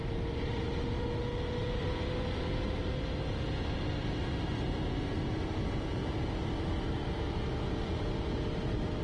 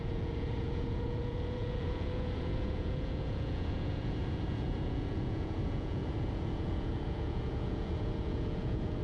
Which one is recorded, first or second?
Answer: first